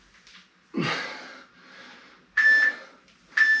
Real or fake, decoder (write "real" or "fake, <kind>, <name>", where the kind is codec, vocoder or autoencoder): real